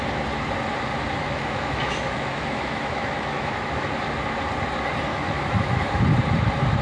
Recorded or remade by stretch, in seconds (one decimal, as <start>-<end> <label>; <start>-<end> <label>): 0.0-1.2 recorded; 1.2-3.9 remade; 3.9-5.1 recorded; 5.1-6.0 remade; 6.0-6.8 recorded